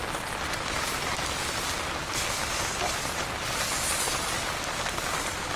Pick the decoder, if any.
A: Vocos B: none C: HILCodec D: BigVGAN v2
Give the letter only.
B